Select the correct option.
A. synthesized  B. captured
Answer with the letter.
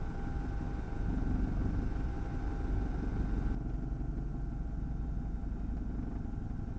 B